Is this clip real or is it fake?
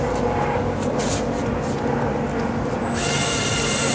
real